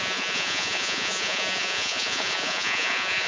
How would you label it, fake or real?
fake